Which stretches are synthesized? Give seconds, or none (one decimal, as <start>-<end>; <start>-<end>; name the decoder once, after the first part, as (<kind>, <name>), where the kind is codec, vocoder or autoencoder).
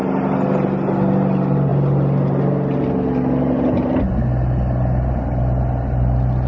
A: none